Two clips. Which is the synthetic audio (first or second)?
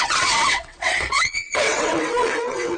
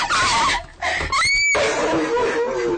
first